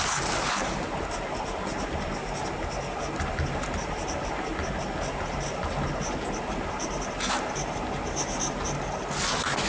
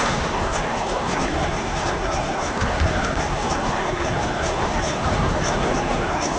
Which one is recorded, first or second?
first